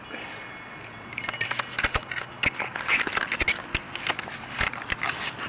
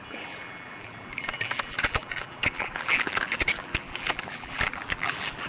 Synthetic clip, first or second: second